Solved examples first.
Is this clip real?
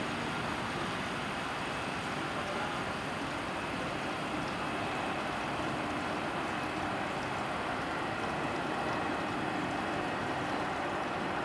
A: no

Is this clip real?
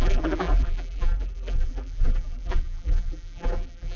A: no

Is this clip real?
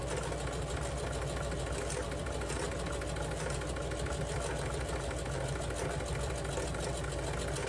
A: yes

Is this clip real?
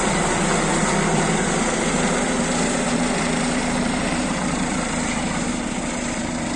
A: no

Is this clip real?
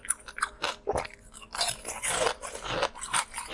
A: yes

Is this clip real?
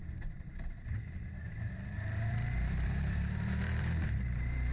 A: no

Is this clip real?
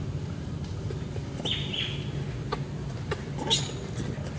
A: yes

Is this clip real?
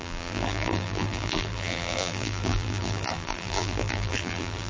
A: no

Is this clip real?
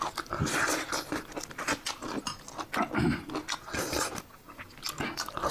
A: yes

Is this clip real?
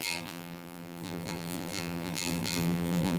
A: no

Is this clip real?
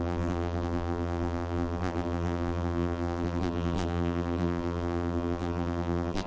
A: no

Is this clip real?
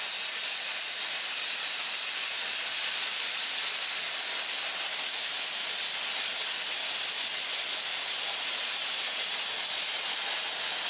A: yes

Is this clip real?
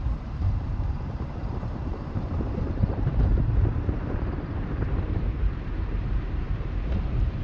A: no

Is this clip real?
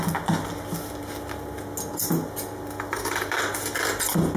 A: yes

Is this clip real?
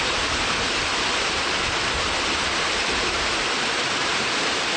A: no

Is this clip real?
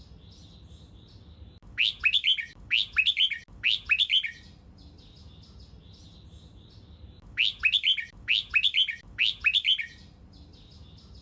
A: yes